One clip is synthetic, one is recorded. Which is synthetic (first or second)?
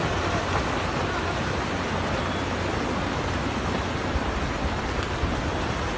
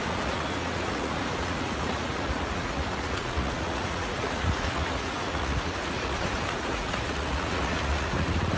second